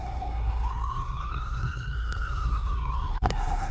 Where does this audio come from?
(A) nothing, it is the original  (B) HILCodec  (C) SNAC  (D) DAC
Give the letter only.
C